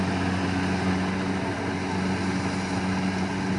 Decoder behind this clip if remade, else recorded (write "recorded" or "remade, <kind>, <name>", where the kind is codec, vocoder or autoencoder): recorded